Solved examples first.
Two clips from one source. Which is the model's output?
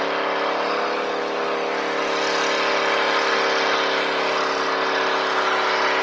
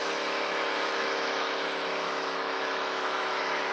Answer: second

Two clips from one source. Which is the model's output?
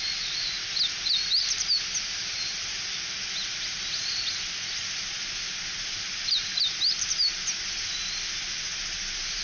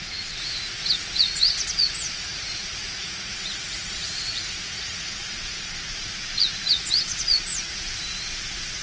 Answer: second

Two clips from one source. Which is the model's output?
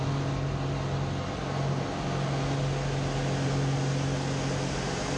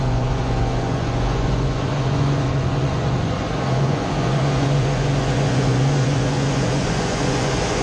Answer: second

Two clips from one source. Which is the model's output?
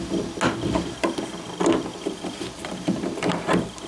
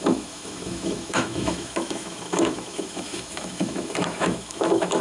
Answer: second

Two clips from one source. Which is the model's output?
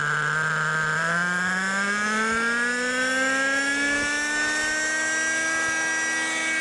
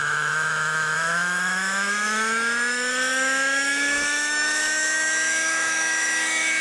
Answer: second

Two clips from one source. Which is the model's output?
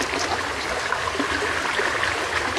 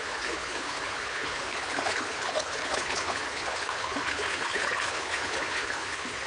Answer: second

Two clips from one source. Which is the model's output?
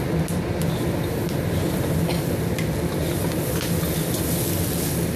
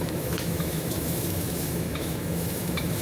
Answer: second